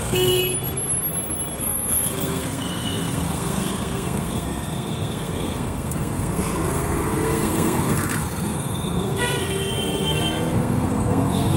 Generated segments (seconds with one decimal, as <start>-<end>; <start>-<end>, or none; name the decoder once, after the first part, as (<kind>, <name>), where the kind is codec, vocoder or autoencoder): 0.0-0.4 (codec, SNAC); 1.6-11.6